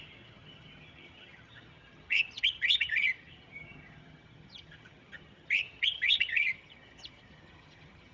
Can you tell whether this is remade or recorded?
remade